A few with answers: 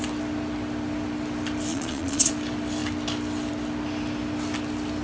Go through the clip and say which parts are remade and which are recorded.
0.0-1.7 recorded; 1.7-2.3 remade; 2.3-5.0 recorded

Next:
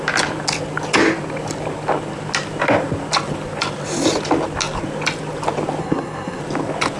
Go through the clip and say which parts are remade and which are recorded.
0.0-5.8 recorded; 5.8-6.4 remade; 6.4-7.0 recorded